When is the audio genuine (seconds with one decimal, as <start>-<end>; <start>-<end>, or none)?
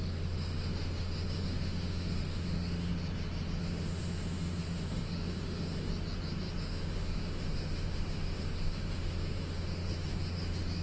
2.9-3.6; 5.9-6.6